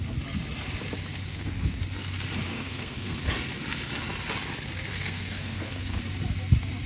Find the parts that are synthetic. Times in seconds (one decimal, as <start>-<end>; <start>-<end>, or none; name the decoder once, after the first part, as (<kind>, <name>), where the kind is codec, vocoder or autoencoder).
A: 1.3-1.8 (codec, SNAC); 2.5-3.2; 4.9-6.0